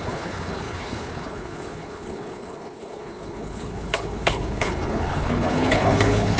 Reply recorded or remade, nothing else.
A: remade